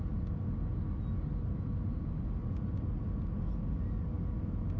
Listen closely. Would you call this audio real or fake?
real